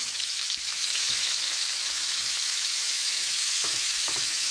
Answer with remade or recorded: remade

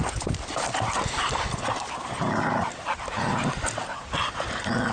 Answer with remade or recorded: recorded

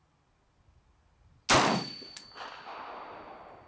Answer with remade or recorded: recorded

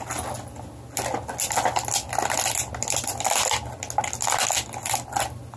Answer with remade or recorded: recorded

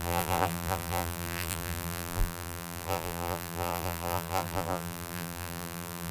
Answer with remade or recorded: remade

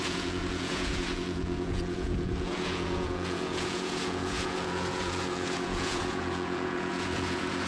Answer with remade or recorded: remade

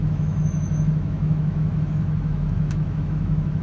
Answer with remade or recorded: remade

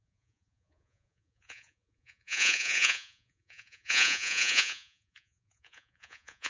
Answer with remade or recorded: remade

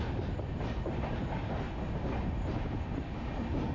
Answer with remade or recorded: recorded